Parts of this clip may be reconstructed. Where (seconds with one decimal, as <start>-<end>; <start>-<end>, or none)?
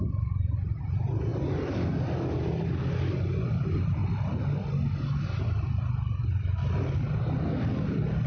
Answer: 0.0-1.3; 3.5-4.0